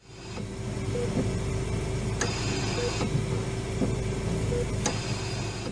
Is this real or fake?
real